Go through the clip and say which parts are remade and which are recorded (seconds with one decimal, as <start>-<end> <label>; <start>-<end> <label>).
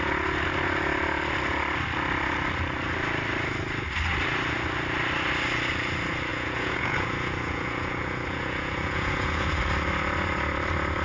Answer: 0.0-6.3 recorded; 6.3-9.6 remade; 9.6-11.0 recorded